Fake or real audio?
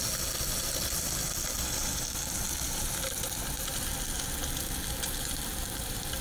real